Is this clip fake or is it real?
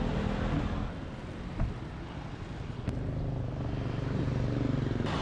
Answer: real